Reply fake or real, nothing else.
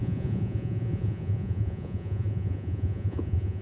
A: fake